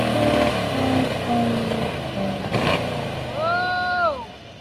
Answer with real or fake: real